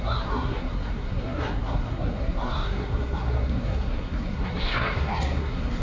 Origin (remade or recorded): remade